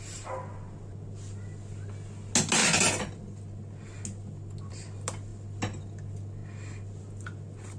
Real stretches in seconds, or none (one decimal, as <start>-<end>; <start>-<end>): 0.0-7.8